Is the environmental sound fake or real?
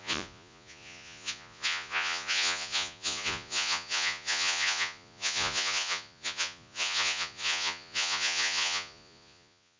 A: fake